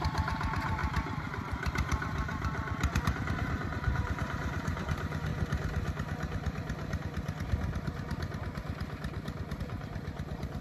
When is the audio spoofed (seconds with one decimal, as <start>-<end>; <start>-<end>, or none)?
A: 0.0-5.3; 9.6-10.6